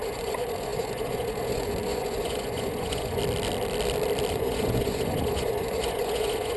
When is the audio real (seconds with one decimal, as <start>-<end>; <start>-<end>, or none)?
3.2-4.3